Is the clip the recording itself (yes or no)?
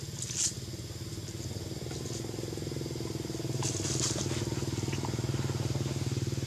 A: yes